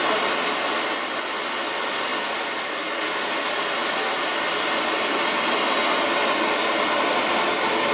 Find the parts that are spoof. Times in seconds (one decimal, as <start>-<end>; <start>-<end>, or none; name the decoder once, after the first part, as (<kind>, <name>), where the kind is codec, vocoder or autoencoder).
none